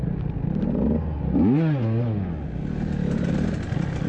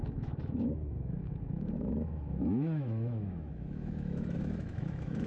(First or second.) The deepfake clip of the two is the second